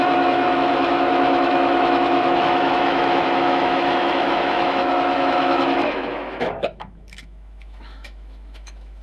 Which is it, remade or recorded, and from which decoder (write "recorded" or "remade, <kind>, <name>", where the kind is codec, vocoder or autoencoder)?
remade, autoencoder, DAC-VAE